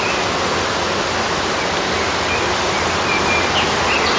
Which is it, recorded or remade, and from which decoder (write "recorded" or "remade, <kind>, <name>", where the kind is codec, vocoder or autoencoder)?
recorded